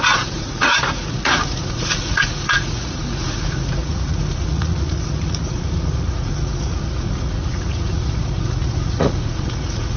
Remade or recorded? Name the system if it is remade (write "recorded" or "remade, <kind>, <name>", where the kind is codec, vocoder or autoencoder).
remade, vocoder, Vocos